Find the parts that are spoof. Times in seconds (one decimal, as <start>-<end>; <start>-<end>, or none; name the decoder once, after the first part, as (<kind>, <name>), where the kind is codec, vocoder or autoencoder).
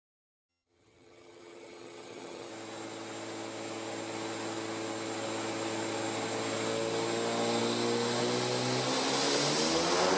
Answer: 0.5-2.5 (vocoder, HiFi-GAN)